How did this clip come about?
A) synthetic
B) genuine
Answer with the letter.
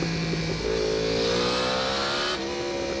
B